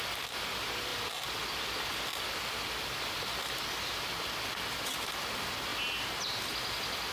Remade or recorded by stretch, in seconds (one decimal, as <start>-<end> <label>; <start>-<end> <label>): 0.0-7.1 recorded